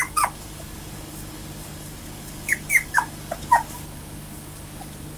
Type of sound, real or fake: fake